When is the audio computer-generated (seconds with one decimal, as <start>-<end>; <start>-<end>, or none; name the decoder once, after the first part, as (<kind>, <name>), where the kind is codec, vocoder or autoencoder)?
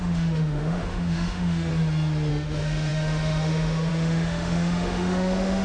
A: 0.0-1.7 (autoencoder, DAC-VAE); 2.3-5.6